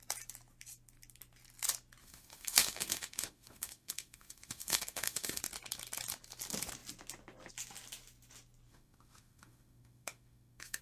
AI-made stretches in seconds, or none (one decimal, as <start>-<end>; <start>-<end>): 2.0-5.4; 8.7-10.8